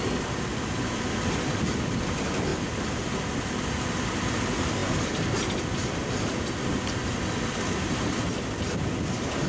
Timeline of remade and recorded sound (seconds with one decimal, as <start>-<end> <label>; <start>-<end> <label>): 0.0-9.5 recorded